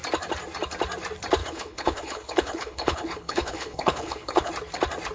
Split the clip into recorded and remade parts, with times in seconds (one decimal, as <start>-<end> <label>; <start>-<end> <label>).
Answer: 0.0-1.4 recorded; 1.4-4.5 remade; 4.5-5.1 recorded